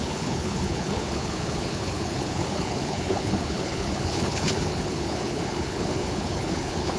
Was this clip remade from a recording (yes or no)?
yes